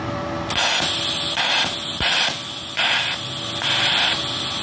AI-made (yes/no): no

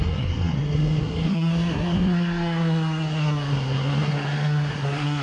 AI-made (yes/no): yes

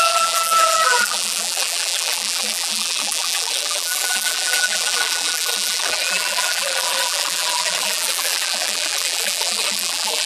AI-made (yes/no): yes